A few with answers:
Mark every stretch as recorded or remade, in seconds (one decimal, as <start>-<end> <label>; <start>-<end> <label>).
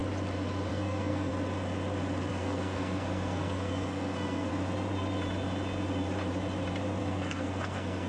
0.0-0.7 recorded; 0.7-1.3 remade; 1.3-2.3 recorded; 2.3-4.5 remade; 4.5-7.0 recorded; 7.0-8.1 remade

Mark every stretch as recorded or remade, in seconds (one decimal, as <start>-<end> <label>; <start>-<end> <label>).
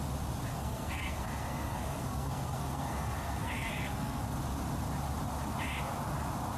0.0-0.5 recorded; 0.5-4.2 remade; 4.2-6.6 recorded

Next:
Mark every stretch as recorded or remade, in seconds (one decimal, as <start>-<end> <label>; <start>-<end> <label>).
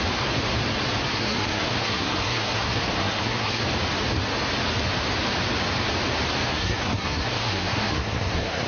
0.0-1.1 recorded; 1.1-3.6 remade; 3.6-6.5 recorded; 6.5-8.7 remade